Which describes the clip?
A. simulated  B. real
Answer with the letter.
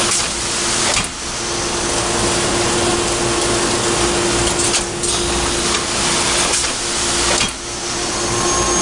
B